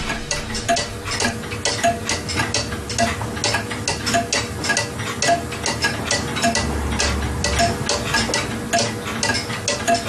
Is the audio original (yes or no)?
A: yes